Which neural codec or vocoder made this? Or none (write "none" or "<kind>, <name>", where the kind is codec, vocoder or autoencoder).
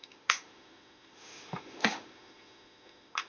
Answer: autoencoder, DAC-VAE